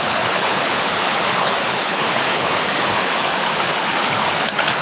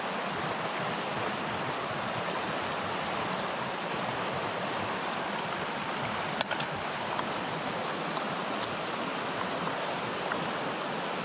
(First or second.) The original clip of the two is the second